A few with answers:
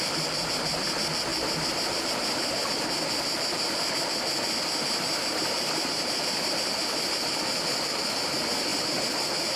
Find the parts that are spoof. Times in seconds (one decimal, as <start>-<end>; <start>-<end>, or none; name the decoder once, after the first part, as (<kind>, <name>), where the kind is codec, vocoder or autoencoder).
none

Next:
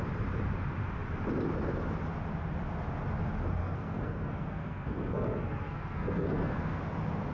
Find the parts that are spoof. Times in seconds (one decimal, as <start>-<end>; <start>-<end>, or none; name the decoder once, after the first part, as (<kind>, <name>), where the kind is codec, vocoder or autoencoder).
3.6-6.8 (codec, SNAC)

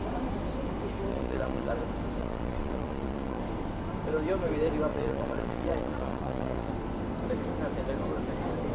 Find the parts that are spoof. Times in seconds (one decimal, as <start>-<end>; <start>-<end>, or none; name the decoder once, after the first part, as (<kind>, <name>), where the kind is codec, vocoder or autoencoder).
1.1-1.7 (vocoder, Vocos); 2.2-3.4; 4.9-6.7

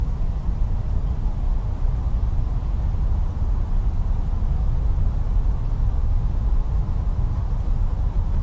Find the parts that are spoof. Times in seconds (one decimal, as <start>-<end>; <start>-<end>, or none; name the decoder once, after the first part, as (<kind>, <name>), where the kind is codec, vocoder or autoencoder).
6.0-7.4 (autoencoder, DAC-VAE)